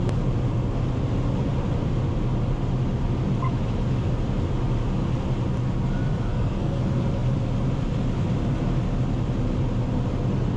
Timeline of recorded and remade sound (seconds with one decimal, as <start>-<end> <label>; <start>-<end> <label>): 0.0-6.3 recorded; 6.3-6.8 remade; 6.8-10.6 recorded